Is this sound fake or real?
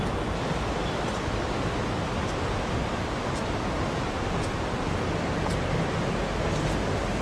real